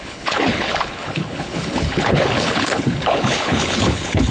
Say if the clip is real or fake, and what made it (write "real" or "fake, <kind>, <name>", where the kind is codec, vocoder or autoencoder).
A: fake, codec, HILCodec